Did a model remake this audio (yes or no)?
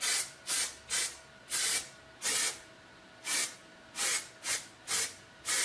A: no